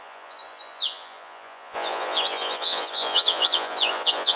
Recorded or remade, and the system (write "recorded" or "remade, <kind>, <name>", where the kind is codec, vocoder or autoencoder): remade, vocoder, Vocos